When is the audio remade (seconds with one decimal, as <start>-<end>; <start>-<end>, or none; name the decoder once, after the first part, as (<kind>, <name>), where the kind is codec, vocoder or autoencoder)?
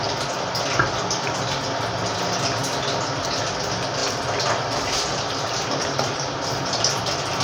none